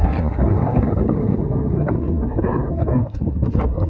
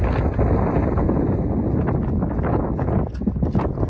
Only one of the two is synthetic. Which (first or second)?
first